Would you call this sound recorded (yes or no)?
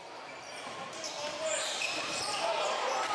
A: no